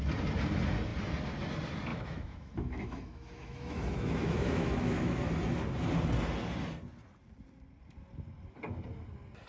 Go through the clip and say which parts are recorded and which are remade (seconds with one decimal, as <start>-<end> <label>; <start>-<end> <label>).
0.0-1.9 recorded; 1.9-5.2 remade; 5.2-9.5 recorded